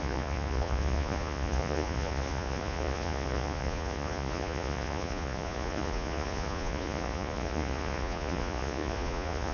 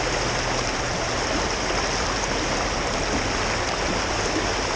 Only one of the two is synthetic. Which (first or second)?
first